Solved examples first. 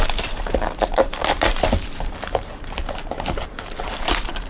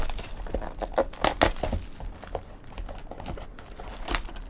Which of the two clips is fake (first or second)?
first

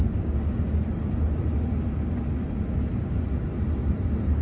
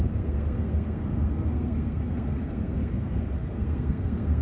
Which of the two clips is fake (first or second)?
second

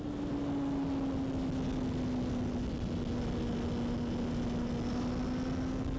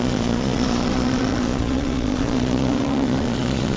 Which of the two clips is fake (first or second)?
second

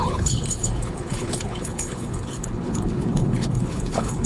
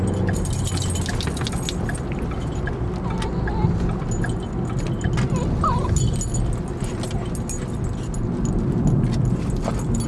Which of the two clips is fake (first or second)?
first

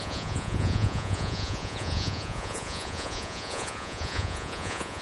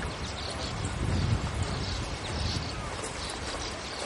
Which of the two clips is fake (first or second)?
first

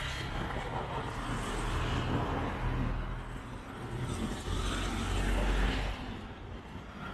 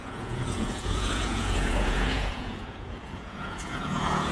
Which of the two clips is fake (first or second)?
second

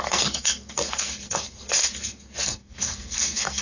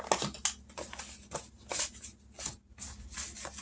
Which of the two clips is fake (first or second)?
first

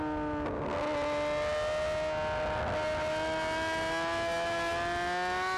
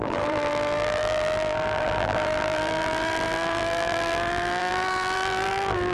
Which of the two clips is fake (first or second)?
second